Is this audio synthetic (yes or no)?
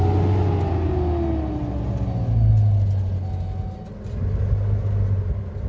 no